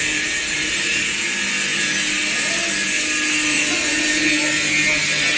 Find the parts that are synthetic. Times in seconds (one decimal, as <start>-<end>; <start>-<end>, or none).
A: none